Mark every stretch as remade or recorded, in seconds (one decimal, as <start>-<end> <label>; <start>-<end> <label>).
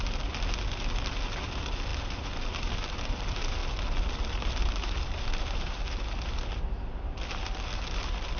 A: 0.0-8.4 recorded